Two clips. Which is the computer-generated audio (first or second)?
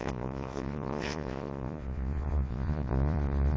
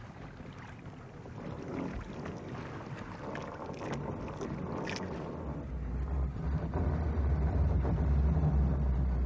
first